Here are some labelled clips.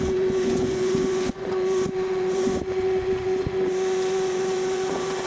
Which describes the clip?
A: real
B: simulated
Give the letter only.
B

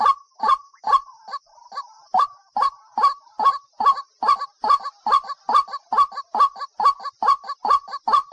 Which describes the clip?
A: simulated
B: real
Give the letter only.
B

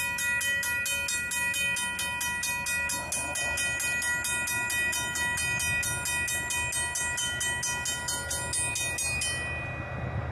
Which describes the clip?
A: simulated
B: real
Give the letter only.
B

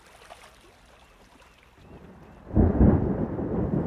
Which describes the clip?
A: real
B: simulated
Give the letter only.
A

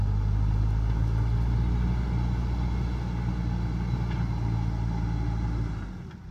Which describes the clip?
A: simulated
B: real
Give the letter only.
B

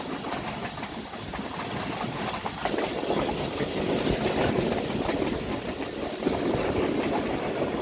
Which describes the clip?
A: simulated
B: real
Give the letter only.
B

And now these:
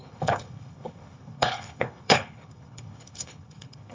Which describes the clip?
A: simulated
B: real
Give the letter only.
A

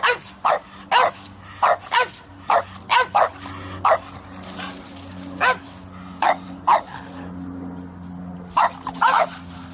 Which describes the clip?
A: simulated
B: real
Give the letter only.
B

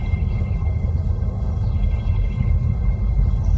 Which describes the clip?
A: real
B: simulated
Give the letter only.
B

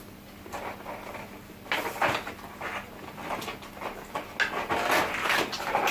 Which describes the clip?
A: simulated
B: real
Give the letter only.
B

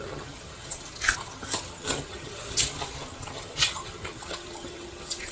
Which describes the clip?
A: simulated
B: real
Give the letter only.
A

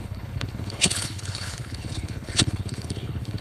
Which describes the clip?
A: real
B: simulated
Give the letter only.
B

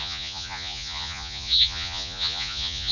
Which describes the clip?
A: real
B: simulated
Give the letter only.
B